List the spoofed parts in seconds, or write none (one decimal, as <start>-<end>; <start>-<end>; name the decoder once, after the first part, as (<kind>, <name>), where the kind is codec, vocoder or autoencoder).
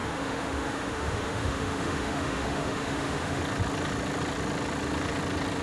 0.0-3.4 (autoencoder, DAC-VAE)